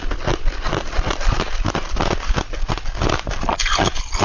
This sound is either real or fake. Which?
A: real